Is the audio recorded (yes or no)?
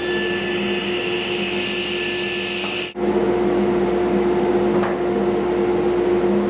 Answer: yes